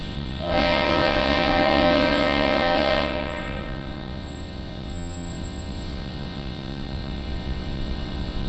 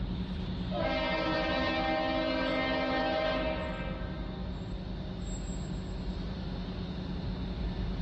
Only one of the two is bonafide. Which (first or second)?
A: second